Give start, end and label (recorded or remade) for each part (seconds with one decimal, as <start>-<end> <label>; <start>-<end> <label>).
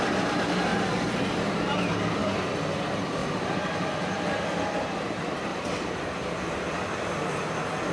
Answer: 0.0-2.2 remade; 2.2-2.8 recorded; 2.8-3.2 remade; 3.2-4.8 recorded; 4.8-5.5 remade; 5.5-7.9 recorded